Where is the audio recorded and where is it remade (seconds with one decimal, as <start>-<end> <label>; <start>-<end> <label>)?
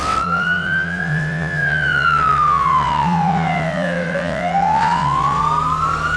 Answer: 0.0-5.4 remade; 5.4-6.2 recorded